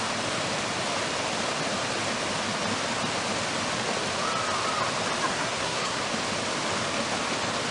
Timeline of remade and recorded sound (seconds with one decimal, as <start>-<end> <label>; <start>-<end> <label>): 0.0-5.3 recorded; 5.3-6.0 remade; 6.0-7.7 recorded

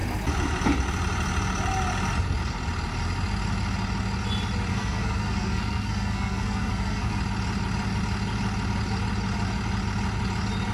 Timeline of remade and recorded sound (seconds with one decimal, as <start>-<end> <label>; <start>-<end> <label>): 0.0-4.7 recorded; 4.7-7.2 remade; 7.2-10.7 recorded